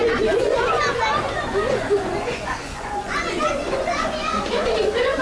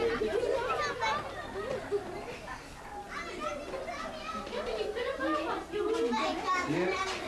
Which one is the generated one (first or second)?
first